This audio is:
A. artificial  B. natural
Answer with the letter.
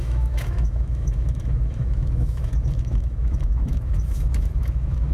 A